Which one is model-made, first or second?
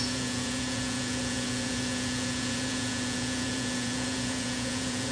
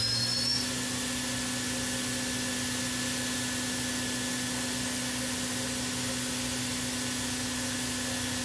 first